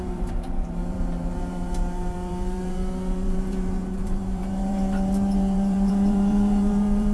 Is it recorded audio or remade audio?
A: remade